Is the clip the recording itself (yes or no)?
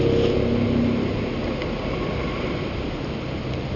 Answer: yes